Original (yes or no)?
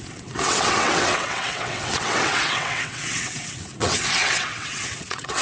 no